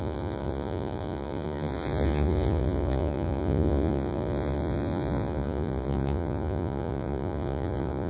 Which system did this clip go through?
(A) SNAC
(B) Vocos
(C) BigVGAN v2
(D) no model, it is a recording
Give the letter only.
B